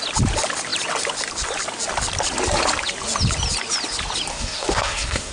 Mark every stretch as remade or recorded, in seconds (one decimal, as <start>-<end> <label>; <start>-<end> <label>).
0.0-4.3 recorded; 4.3-5.3 remade